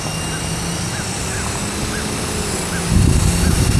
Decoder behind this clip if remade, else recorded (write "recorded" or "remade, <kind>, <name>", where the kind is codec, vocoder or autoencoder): recorded